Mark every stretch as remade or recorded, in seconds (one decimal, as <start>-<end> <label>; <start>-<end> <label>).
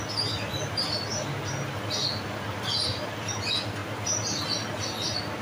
0.0-2.0 recorded; 2.0-3.2 remade; 3.2-5.4 recorded